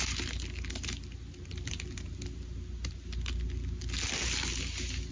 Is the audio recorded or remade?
recorded